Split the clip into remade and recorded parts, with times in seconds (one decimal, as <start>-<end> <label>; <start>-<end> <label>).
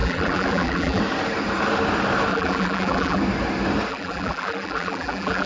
0.0-1.0 remade; 1.0-2.3 recorded; 2.3-3.2 remade; 3.2-3.9 recorded; 3.9-5.5 remade